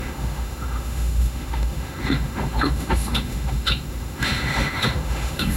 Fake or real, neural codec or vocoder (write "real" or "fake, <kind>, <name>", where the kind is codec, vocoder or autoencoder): fake, autoencoder, DAC-VAE